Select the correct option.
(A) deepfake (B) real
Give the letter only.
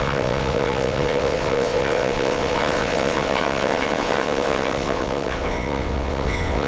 A